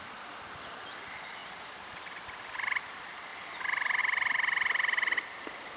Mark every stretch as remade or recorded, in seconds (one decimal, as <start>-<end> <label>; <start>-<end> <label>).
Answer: 0.0-1.4 remade; 1.4-2.9 recorded; 2.9-3.3 remade; 3.3-4.0 recorded; 4.0-5.8 remade